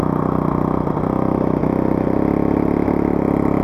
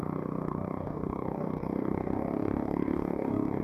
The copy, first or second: second